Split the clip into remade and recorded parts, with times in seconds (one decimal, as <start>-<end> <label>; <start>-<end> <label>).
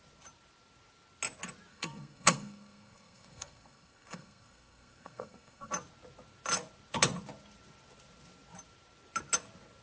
0.0-1.7 recorded; 1.7-5.7 remade; 5.7-9.8 recorded